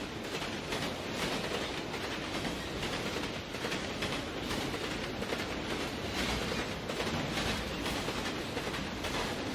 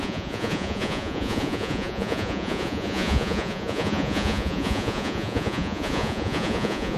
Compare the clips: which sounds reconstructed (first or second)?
second